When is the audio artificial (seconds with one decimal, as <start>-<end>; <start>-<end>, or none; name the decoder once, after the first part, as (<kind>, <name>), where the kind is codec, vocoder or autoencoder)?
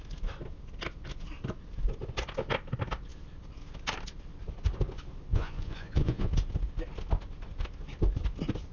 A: 5.3-6.3 (vocoder, Vocos)